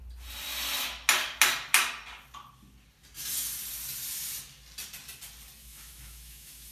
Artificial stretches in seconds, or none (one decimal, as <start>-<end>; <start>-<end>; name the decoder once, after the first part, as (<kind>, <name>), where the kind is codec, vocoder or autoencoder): 5.6-6.7 (autoencoder, DAC-VAE)